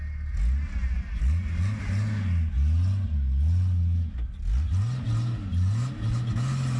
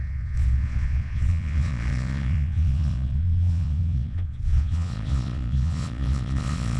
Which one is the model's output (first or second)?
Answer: second